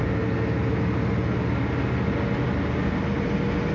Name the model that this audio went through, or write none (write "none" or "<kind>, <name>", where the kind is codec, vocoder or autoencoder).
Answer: none